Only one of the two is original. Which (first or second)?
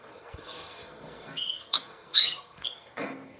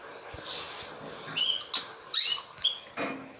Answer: second